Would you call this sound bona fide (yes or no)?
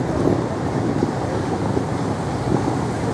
yes